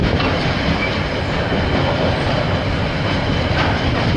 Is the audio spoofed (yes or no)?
no